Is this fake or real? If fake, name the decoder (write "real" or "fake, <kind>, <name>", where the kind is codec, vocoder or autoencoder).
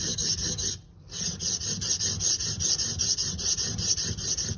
real